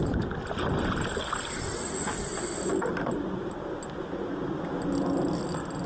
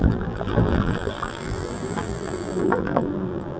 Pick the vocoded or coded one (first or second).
second